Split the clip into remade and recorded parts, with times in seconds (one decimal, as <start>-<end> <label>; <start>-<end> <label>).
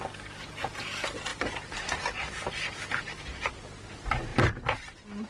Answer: 0.0-5.3 recorded